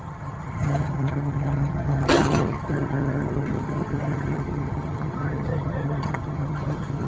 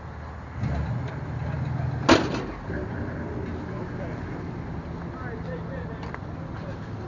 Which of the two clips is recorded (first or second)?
second